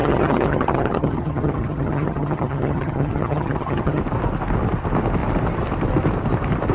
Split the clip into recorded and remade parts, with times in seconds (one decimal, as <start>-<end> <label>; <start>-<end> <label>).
0.0-4.0 remade; 4.0-6.7 recorded